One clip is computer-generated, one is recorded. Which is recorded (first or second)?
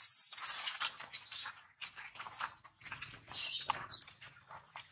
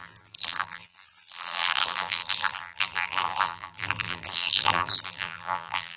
first